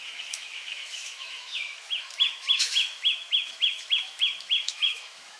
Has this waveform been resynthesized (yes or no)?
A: yes